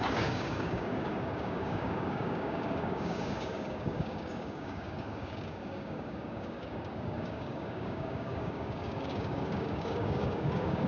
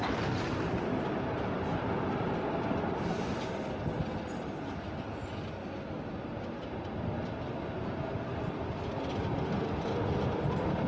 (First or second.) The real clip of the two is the second